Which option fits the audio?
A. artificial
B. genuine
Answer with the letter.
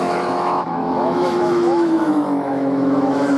A